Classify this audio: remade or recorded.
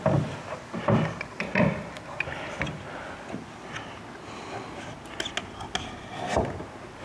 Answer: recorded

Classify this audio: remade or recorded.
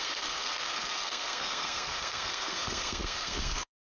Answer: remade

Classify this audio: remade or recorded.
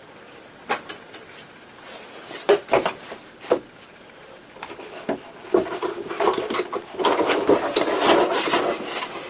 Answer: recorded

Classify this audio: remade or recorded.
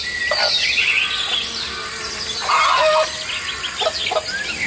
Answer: recorded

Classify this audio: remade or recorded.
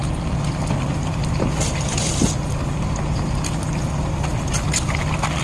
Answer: recorded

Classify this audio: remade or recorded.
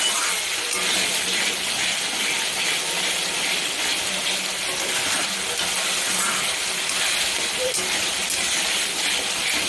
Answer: recorded